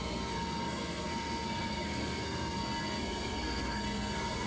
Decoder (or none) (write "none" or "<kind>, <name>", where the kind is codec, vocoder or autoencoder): codec, SNAC